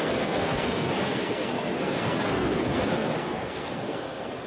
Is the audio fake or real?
fake